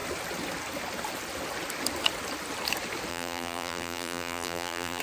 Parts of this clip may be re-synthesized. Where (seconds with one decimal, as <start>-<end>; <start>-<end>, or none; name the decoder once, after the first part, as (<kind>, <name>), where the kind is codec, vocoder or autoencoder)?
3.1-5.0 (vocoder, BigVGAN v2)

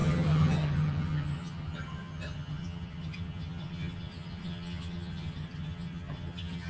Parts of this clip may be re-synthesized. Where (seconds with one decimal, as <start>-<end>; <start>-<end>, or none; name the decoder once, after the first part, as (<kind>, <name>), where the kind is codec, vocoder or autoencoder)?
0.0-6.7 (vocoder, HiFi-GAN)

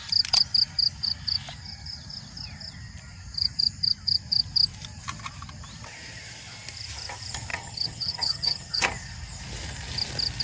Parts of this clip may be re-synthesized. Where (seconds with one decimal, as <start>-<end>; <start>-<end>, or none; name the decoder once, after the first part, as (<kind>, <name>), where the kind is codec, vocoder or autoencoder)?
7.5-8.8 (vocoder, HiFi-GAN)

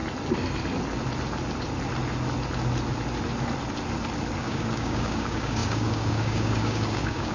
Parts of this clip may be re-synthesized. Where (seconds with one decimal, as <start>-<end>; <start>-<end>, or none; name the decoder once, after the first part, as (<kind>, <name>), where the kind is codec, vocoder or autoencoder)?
4.4-7.3 (codec, DAC)

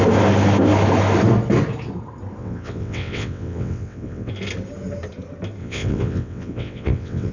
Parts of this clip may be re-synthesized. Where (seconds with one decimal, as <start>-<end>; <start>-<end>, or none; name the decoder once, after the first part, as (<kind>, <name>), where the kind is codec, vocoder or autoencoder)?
2.4-4.3 (vocoder, WaveNeXt); 5.6-7.3

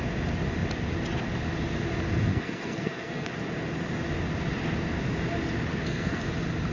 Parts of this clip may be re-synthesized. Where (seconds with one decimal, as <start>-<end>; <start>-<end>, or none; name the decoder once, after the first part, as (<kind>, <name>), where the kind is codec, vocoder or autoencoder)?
2.3-3.3 (codec, SNAC); 5.7-6.2

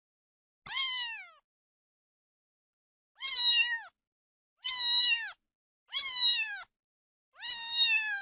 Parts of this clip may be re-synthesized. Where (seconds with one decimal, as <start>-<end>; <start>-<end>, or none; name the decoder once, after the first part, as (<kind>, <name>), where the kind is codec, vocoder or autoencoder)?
none